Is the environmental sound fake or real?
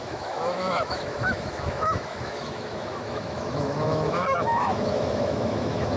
fake